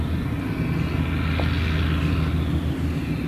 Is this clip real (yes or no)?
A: yes